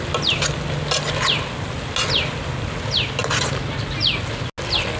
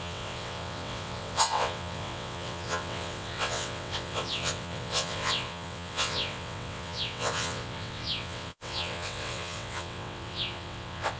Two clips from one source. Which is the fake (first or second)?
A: second